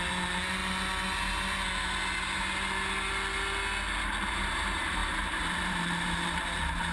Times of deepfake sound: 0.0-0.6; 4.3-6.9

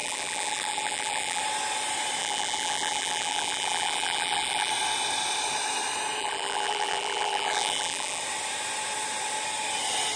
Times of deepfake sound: 0.0-1.4; 2.2-4.7; 6.2-8.2

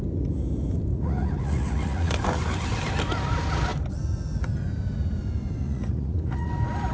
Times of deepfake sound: 0.9-2.1; 5.6-6.5